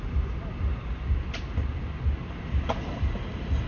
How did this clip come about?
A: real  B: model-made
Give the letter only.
A